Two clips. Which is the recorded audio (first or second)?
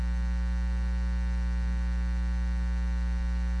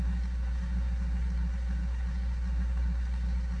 first